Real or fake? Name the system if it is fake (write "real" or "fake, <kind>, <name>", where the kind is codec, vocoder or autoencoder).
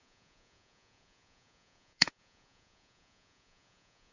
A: fake, vocoder, Vocos